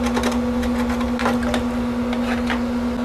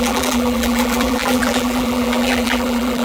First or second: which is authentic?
first